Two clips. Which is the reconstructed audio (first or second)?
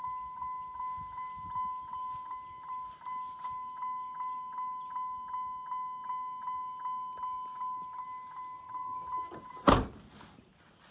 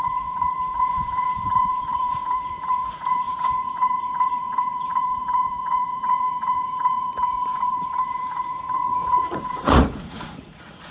second